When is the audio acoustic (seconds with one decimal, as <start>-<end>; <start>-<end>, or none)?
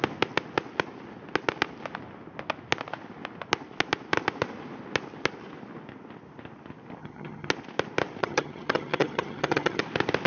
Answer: 0.0-7.0; 7.5-8.2; 9.8-10.3